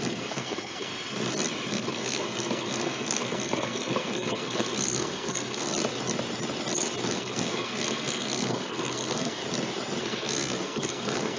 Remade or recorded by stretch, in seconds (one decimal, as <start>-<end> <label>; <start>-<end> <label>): 0.0-0.9 remade; 0.9-1.7 recorded; 1.7-5.7 remade; 5.7-7.1 recorded; 7.1-9.4 remade; 9.4-10.0 recorded; 10.0-11.4 remade